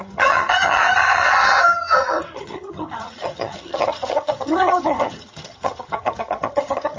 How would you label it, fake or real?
fake